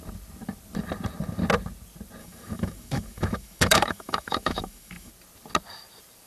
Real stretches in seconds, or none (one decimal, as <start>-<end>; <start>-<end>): 0.0-2.2; 5.1-6.3